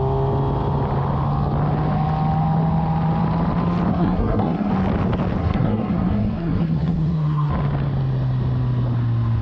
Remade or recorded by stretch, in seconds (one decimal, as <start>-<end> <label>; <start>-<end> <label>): 0.0-3.9 recorded; 3.9-4.7 remade; 4.7-5.4 recorded; 5.4-7.5 remade; 7.5-9.4 recorded